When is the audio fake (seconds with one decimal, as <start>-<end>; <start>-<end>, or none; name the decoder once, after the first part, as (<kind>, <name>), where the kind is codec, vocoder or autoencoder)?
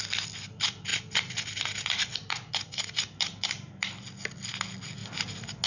none